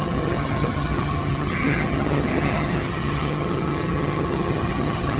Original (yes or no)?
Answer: no